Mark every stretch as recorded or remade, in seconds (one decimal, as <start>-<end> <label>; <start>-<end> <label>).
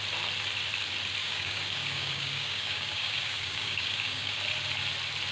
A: 0.0-1.2 recorded; 1.2-4.4 remade; 4.4-5.3 recorded